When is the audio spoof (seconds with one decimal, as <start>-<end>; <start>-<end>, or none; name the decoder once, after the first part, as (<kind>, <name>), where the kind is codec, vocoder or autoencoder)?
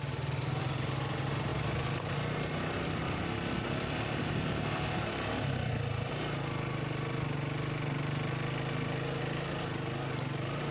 none